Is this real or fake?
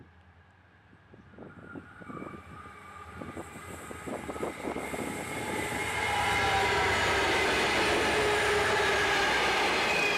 real